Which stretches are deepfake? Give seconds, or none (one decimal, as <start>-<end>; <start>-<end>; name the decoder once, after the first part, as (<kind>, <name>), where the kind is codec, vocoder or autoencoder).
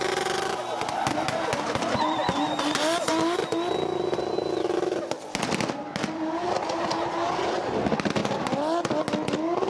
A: none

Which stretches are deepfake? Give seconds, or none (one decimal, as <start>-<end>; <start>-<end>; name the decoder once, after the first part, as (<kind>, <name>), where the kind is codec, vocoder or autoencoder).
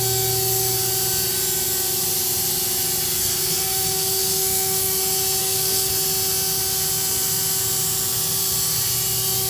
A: 3.2-5.0 (codec, SNAC); 5.4-5.9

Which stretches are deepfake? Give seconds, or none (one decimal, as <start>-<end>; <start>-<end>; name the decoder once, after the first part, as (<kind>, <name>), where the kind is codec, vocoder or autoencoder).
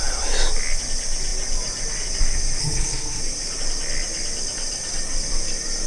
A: 2.6-3.2 (codec, SNAC)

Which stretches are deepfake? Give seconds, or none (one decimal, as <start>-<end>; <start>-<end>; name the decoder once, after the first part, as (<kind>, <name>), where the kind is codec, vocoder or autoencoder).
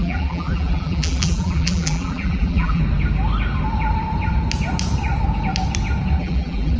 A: 0.0-2.8 (vocoder, BigVGAN v2); 6.2-6.8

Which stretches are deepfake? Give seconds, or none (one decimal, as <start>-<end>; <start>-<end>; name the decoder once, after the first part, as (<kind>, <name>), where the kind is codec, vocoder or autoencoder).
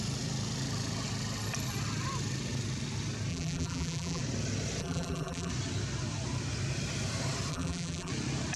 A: 3.3-4.2 (vocoder, BigVGAN v2); 4.8-5.5; 7.5-8.1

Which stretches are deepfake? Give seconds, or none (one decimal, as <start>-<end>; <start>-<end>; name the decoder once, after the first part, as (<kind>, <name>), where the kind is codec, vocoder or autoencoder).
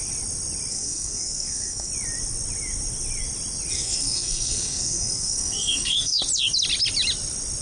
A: 0.7-1.9 (codec, SNAC); 3.7-6.2